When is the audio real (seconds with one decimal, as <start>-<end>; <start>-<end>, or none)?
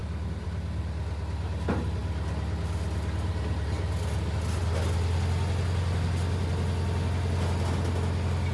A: 0.8-8.5